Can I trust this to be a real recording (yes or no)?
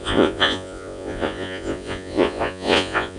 no